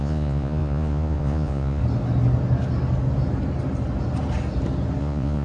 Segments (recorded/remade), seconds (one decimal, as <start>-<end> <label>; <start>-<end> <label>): 0.0-1.8 remade; 1.8-5.0 recorded; 5.0-5.4 remade